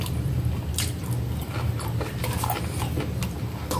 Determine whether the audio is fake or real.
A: real